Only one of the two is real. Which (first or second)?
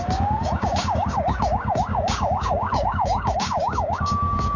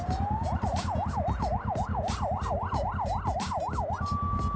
second